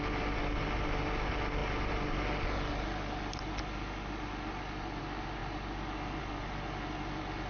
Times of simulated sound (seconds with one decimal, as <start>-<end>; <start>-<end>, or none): none